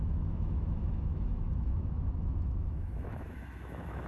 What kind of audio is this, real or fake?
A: fake